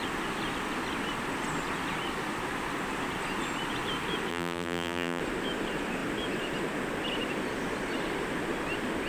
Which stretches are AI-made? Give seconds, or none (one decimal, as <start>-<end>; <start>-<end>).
4.3-5.2